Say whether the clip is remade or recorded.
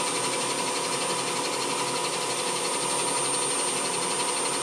recorded